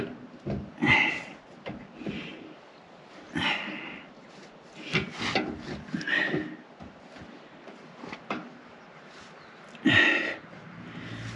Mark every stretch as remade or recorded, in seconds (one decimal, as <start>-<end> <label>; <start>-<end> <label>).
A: 0.0-11.4 recorded